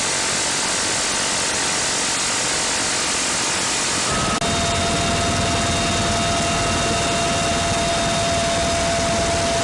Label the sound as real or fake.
real